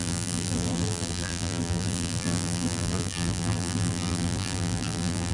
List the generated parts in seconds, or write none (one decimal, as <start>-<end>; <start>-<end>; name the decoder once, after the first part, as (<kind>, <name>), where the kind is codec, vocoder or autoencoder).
0.0-5.3 (vocoder, BigVGAN v2)